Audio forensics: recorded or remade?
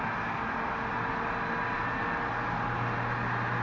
recorded